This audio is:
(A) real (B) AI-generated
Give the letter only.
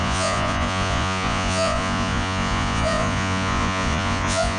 B